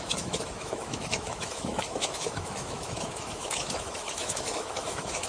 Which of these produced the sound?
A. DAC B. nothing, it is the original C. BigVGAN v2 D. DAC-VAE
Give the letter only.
D